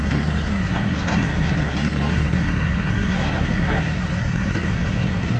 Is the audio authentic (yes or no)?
no